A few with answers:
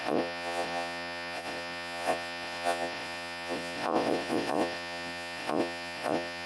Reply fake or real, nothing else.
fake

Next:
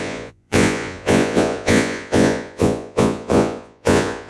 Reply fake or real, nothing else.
fake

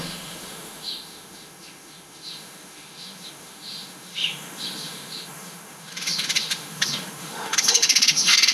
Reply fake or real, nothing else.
fake